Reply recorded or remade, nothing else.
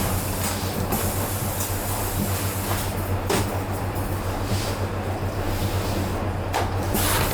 recorded